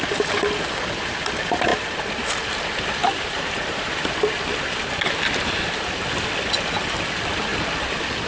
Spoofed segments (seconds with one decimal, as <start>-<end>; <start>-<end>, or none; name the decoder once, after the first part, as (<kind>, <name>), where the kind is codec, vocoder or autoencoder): 3.0-4.0 (vocoder, BigVGAN v2)